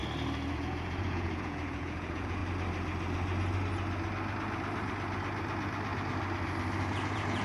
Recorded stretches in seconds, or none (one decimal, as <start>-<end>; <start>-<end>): 0.0-0.5; 2.4-6.8